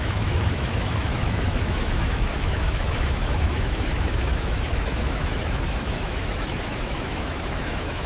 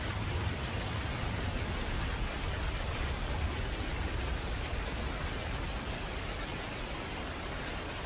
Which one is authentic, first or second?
second